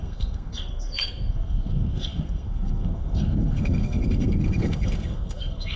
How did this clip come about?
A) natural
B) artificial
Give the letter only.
B